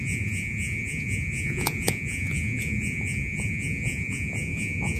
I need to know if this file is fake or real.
fake